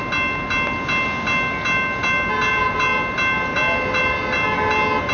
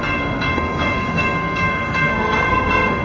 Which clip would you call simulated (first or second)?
second